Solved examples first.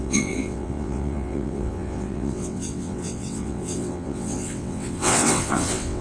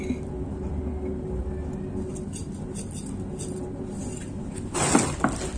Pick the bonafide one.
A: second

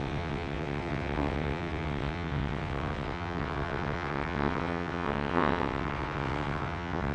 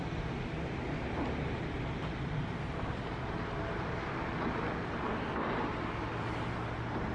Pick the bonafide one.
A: second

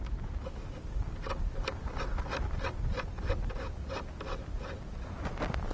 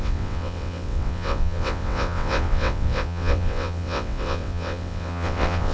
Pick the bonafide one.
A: first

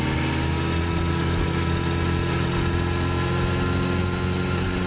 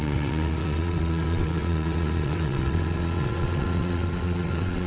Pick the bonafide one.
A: first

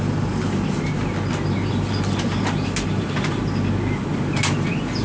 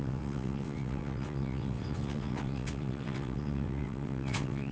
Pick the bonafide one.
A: first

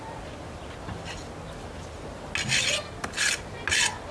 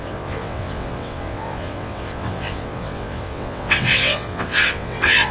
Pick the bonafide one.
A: first